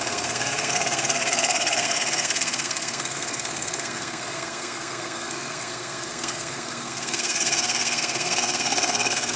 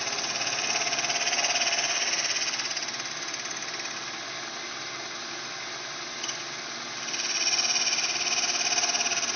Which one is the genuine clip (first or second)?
second